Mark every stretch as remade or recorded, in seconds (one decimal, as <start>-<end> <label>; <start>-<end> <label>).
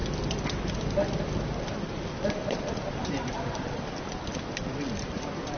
0.0-1.2 recorded; 1.2-5.6 remade